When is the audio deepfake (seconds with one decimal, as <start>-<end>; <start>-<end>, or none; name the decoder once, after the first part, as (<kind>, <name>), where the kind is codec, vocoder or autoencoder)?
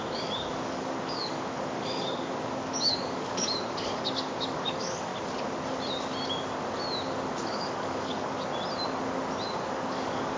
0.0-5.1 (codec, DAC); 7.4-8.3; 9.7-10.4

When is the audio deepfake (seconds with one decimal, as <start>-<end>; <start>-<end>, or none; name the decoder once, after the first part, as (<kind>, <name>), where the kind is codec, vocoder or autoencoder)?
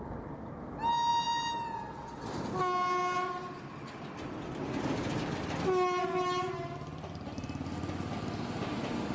none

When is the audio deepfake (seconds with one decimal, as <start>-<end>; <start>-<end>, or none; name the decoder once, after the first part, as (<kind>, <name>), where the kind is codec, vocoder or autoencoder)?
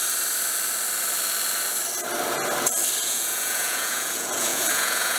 3.0-5.2 (vocoder, Vocos)